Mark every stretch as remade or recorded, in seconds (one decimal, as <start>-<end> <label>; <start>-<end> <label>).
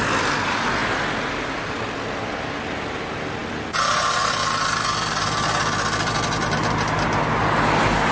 0.0-8.1 recorded